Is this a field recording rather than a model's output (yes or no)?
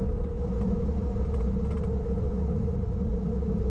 yes